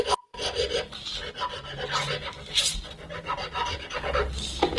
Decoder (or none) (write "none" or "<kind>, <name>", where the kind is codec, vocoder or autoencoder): none